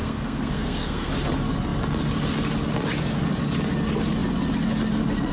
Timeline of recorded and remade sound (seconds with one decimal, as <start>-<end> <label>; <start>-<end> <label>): 0.0-1.1 remade; 1.1-5.3 recorded